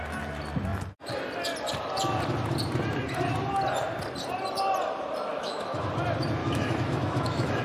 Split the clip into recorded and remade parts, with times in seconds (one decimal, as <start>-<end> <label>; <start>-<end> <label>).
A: 0.0-5.3 recorded; 5.3-5.9 remade; 5.9-6.4 recorded; 6.4-7.6 remade